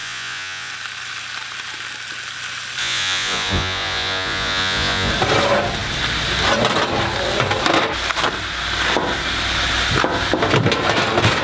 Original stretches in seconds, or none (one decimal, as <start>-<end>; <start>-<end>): 0.7-2.8; 5.1-11.4